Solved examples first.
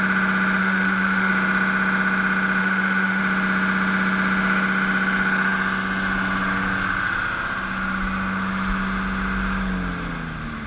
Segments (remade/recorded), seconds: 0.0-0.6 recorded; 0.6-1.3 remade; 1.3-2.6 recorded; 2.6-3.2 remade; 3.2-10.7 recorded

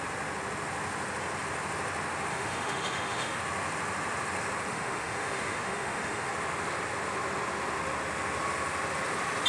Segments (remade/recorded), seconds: 0.0-2.3 recorded; 2.3-3.4 remade; 3.4-4.7 recorded; 4.7-6.3 remade; 6.3-9.5 recorded

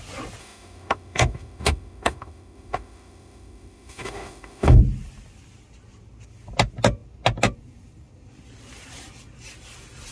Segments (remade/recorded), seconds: 0.0-0.4 recorded; 0.4-4.8 remade; 4.8-10.1 recorded

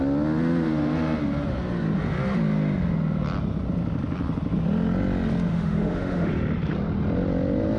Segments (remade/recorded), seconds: 0.0-5.5 recorded; 5.5-6.3 remade; 6.3-7.8 recorded

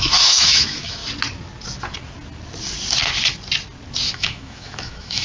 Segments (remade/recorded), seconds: 0.0-1.0 remade; 1.0-4.1 recorded; 4.1-5.2 remade